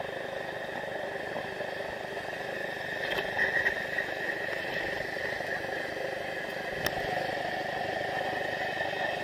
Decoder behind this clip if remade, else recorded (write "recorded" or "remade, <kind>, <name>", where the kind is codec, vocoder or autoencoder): recorded